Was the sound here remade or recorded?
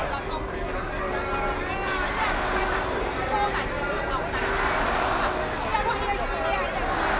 recorded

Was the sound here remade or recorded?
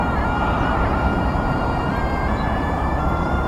remade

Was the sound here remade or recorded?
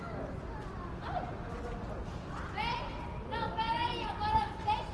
recorded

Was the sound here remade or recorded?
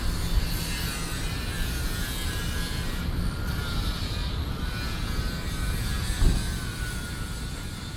remade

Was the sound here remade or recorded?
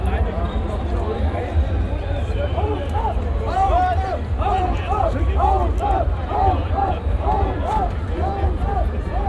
remade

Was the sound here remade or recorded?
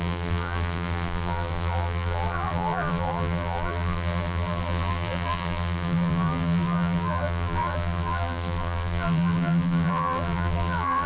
remade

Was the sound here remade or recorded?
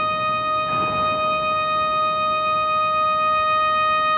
recorded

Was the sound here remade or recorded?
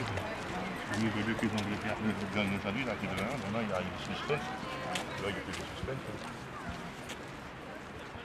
recorded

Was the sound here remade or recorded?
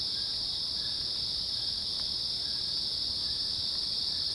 recorded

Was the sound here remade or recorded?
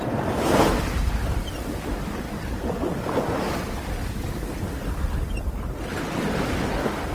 recorded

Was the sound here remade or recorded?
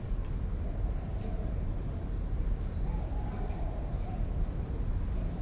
remade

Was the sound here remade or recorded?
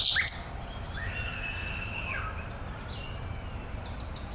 recorded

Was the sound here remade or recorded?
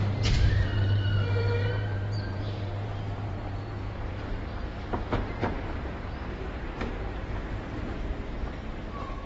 remade